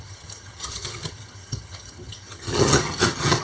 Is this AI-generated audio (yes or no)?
yes